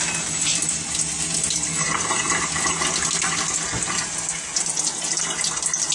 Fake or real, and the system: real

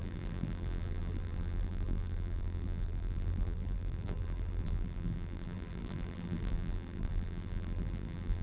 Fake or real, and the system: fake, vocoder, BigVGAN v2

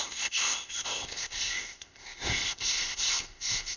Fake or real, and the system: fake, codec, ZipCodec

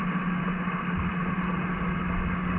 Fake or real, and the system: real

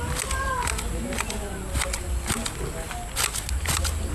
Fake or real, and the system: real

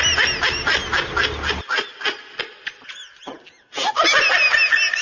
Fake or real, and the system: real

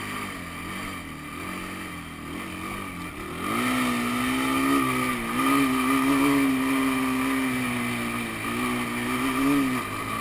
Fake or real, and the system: real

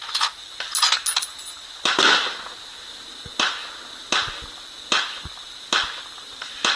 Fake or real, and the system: real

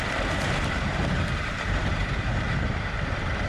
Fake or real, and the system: fake, vocoder, BigVGAN v2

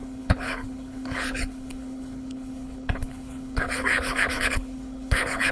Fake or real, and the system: fake, codec, HILCodec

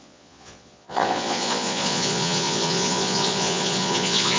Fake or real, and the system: fake, vocoder, Vocos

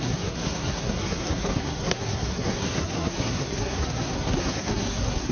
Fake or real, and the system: fake, codec, SNAC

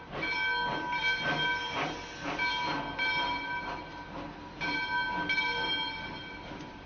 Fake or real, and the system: real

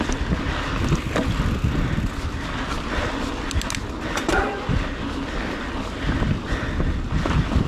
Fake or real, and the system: real